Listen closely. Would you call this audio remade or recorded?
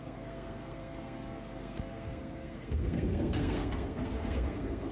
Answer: remade